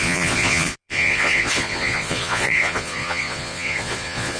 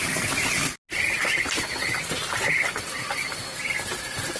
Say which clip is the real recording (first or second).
second